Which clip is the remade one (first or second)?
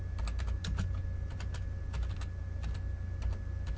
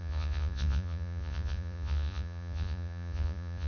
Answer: second